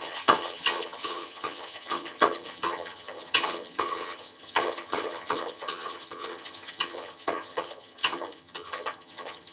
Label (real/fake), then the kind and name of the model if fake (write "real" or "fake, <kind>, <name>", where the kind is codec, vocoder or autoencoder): fake, vocoder, HiFi-GAN